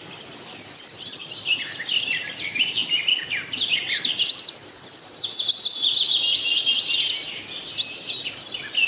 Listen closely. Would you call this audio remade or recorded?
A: recorded